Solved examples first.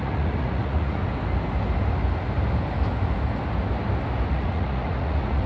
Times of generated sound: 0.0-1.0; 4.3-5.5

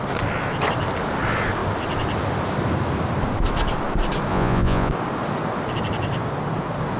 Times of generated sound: 4.3-4.9